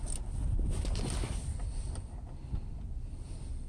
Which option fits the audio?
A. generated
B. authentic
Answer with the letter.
B